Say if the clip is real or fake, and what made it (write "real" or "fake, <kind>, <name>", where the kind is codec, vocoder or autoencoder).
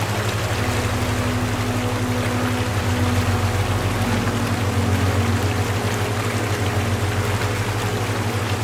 real